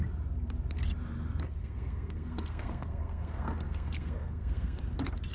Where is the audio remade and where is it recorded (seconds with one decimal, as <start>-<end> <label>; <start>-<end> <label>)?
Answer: 0.0-1.6 recorded; 1.6-4.8 remade; 4.8-5.3 recorded